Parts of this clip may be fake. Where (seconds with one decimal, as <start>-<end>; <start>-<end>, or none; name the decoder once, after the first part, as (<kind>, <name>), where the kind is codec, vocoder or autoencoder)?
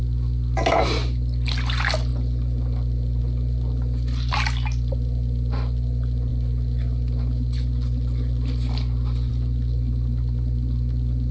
none